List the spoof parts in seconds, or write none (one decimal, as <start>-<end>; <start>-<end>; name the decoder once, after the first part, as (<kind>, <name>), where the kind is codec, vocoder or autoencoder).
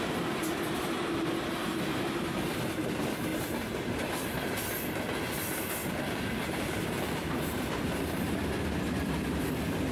3.3-4.1 (vocoder, BigVGAN v2); 5.8-7.7